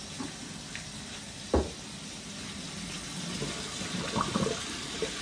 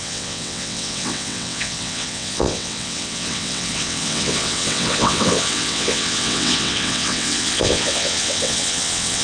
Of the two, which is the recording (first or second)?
first